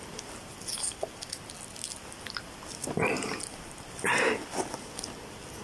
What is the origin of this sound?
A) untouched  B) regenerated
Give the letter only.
A